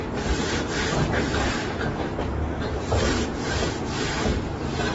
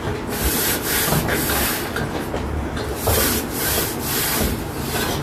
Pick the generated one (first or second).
first